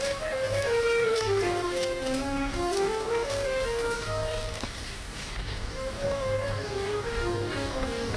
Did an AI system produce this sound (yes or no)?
yes